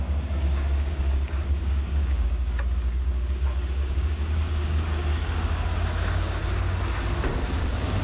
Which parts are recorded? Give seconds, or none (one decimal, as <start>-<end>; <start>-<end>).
6.4-7.6